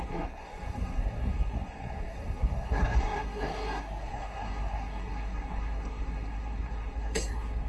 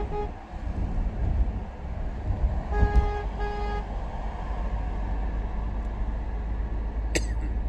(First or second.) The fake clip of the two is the first